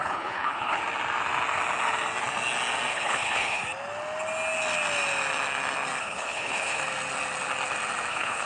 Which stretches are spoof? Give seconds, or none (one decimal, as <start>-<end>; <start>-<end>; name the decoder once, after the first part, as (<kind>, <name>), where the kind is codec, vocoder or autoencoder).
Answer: 0.0-0.8 (codec, HILCodec); 2.9-3.6; 6.0-6.8; 8.1-8.5